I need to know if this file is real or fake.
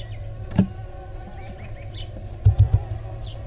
real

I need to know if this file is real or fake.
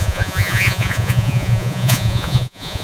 fake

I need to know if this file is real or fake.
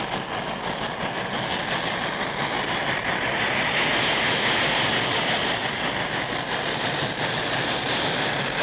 real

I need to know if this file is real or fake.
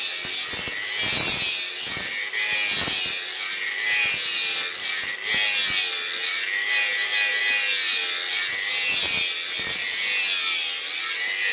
real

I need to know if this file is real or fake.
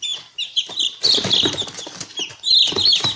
real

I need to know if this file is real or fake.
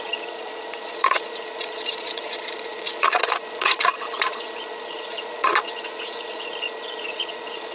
fake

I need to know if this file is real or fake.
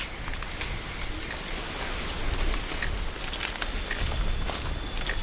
real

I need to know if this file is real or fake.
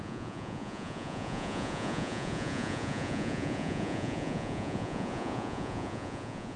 fake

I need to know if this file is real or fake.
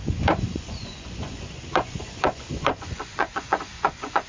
fake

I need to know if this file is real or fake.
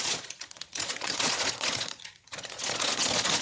fake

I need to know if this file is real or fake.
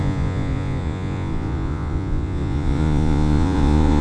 fake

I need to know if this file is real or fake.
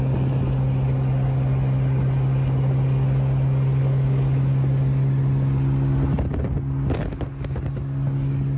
real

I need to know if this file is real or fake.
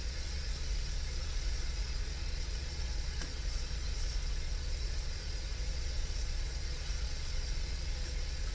fake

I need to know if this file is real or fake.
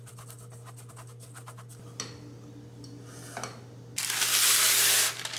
real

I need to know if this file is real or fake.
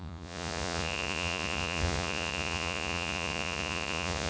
fake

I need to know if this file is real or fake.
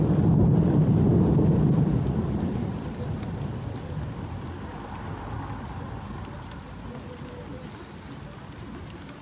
real